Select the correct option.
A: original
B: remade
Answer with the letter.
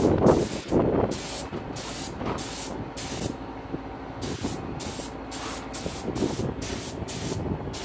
A